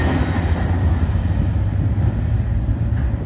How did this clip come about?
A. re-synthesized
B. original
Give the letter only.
B